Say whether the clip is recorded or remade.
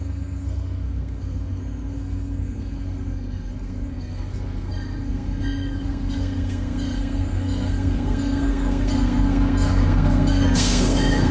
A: remade